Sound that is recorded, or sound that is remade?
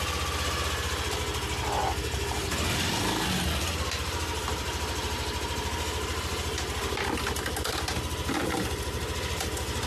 recorded